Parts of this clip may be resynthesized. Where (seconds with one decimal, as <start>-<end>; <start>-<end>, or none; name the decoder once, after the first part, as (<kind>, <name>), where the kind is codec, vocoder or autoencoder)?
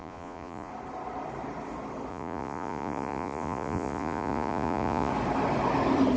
0.0-0.7 (vocoder, Vocos); 2.1-5.1